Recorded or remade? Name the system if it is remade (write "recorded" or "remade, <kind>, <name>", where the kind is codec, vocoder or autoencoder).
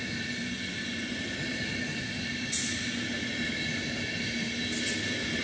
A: recorded